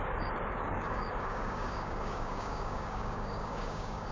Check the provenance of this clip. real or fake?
fake